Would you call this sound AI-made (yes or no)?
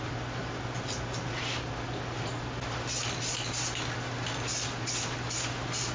no